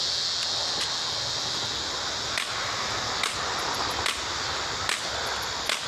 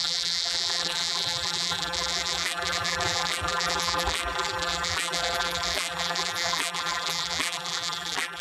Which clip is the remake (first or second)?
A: second